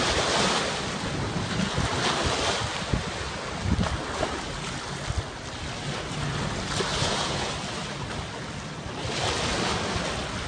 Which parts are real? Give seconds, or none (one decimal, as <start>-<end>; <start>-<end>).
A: 0.0-6.9; 7.5-10.5